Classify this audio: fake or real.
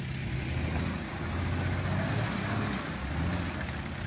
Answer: real